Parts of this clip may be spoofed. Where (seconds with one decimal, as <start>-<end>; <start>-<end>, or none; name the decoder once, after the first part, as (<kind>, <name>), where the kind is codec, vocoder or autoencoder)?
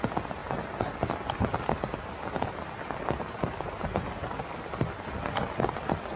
none